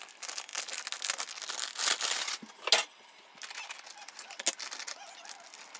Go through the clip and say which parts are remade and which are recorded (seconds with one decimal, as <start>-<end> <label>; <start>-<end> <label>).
0.0-5.8 recorded